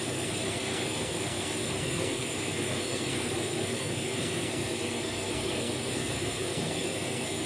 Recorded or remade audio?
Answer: remade